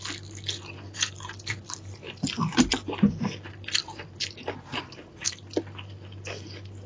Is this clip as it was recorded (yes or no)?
yes